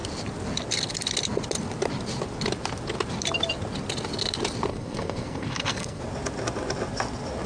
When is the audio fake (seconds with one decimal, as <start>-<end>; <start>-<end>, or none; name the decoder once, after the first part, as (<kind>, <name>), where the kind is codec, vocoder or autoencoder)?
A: 4.7-6.0 (codec, SNAC)